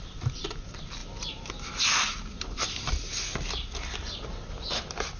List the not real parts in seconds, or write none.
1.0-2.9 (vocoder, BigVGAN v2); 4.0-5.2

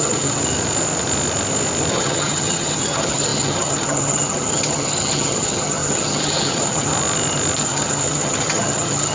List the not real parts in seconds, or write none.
0.0-0.4 (vocoder, HiFi-GAN); 1.9-6.9; 7.6-9.1